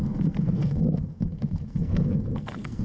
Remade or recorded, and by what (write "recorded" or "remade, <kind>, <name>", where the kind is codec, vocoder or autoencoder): remade, codec, SNAC